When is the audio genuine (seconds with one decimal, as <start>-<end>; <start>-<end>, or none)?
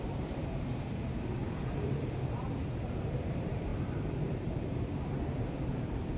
none